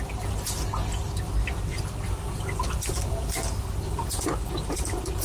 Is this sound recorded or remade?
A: recorded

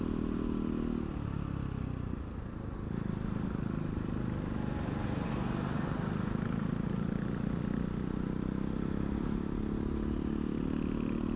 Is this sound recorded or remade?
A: recorded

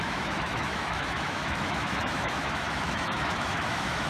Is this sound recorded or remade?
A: remade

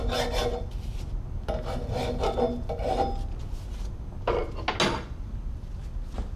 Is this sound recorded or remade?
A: recorded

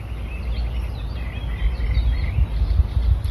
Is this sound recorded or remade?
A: recorded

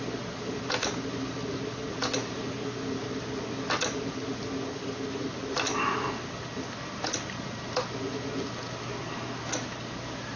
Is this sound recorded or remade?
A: recorded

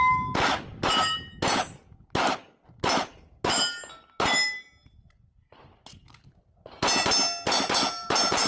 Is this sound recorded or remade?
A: recorded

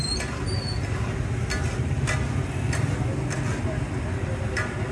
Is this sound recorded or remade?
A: recorded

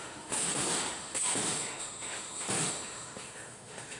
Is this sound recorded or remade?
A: remade